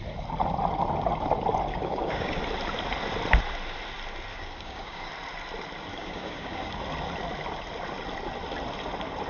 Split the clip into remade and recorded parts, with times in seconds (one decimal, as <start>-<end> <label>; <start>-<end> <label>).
0.0-1.7 recorded; 1.7-2.4 remade; 2.4-4.3 recorded; 4.3-5.1 remade; 5.1-5.9 recorded; 5.9-6.7 remade; 6.7-9.3 recorded